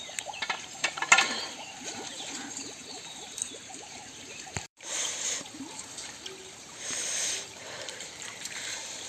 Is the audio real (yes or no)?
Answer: no